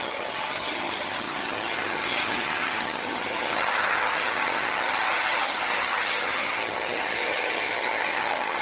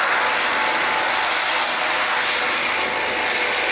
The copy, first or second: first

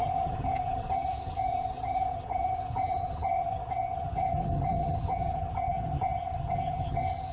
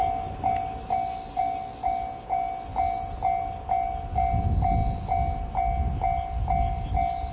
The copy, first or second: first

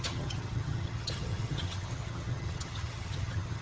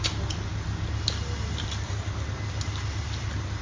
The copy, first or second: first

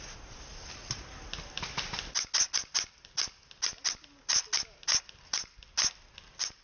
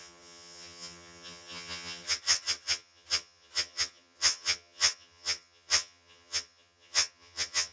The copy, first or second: second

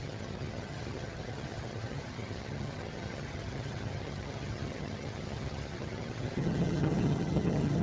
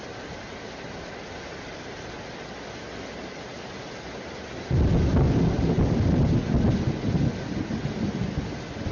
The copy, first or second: first